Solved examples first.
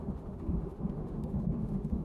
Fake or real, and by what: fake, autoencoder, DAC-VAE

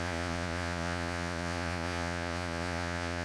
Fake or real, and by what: fake, vocoder, Vocos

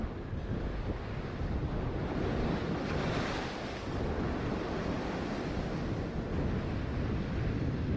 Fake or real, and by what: real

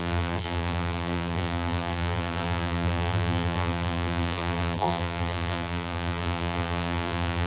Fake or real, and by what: fake, vocoder, BigVGAN v2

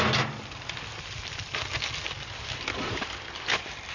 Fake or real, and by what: real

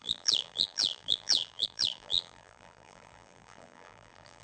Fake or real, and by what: fake, vocoder, BigVGAN v2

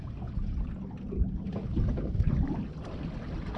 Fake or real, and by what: real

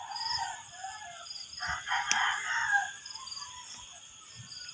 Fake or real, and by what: real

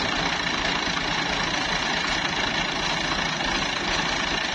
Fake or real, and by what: real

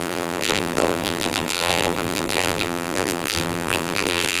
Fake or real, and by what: fake, vocoder, BigVGAN v2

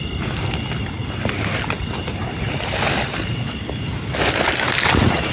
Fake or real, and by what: real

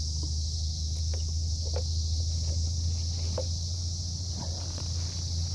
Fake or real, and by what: real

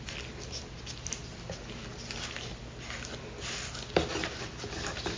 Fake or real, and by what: real